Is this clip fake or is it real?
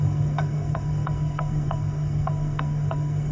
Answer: fake